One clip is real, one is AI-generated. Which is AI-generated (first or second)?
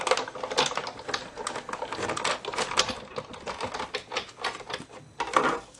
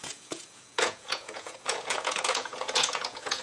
second